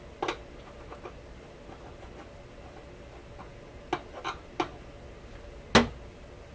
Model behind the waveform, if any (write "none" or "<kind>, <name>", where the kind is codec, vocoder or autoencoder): none